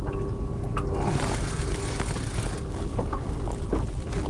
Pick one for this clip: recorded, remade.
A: recorded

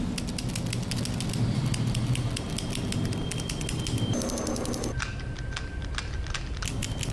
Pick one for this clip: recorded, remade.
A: recorded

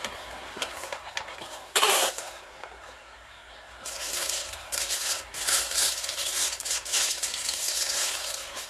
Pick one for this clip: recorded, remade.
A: remade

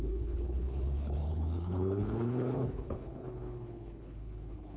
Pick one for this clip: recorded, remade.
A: remade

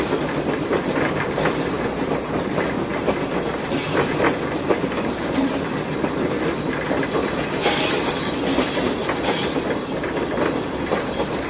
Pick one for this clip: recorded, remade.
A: recorded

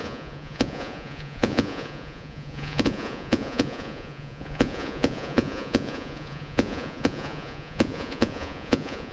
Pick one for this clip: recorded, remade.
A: remade